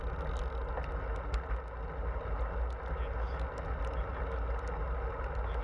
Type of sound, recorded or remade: recorded